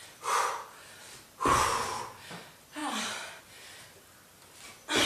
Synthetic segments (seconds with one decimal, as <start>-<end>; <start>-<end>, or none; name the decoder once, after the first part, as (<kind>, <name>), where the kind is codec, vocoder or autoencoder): 2.8-3.4 (vocoder, BigVGAN v2)